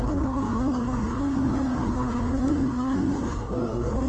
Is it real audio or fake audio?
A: fake